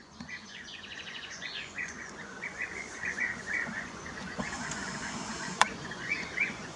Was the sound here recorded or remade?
remade